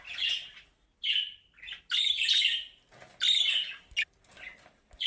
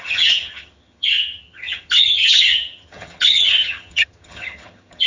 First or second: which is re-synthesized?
second